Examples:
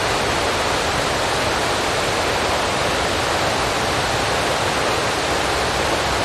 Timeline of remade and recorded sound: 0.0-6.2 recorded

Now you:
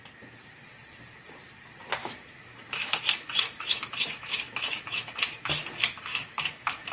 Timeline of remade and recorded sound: 0.0-2.0 recorded; 2.0-5.2 remade; 5.2-6.1 recorded; 6.1-6.9 remade